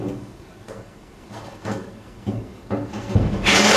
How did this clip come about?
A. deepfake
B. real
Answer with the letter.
A